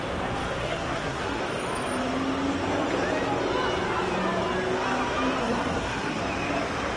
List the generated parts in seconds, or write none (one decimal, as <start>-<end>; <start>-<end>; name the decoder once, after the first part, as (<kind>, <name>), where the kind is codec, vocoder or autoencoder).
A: 0.6-1.4 (codec, SNAC); 5.4-6.2